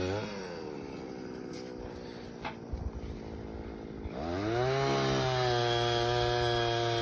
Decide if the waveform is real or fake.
real